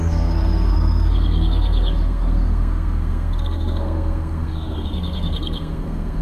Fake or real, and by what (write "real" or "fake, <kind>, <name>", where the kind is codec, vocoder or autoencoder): fake, codec, SNAC